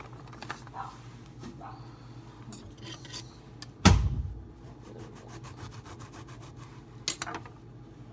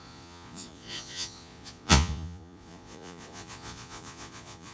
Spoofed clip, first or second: second